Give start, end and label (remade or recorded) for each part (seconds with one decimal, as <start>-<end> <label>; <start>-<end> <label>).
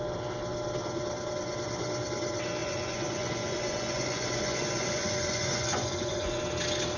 0.0-2.6 recorded; 2.6-6.4 remade; 6.4-7.0 recorded